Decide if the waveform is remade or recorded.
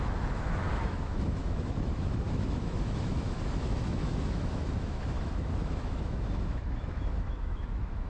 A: remade